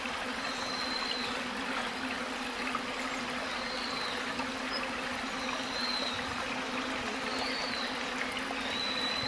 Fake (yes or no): no